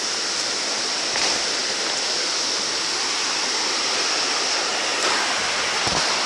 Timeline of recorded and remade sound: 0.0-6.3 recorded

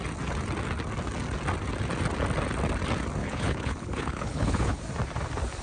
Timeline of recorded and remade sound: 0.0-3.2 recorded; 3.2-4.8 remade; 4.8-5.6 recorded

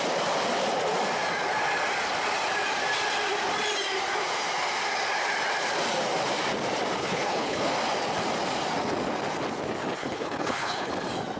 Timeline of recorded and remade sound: 0.0-7.0 recorded; 7.0-7.7 remade; 7.7-10.0 recorded; 10.0-10.9 remade; 10.9-11.4 recorded

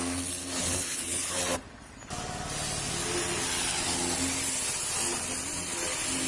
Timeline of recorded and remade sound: 0.0-0.6 recorded; 0.6-1.4 remade; 1.4-6.3 recorded

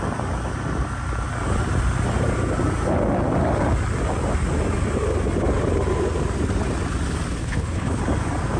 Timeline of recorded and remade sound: 0.0-7.4 recorded; 7.4-8.0 remade; 8.0-8.6 recorded